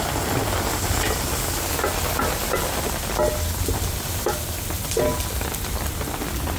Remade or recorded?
recorded